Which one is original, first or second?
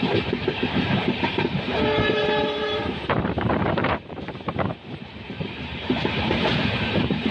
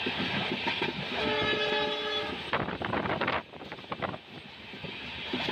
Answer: second